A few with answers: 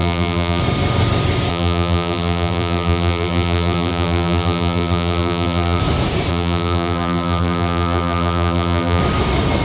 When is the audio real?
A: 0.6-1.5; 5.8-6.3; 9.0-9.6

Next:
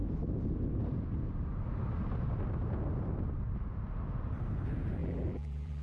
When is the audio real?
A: 0.0-5.0

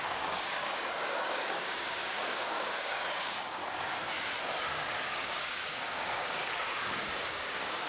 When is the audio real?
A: 3.6-4.6

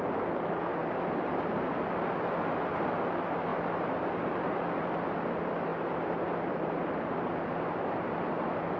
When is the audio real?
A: 0.0-0.8; 1.8-3.5; 4.6-5.7; 7.5-8.8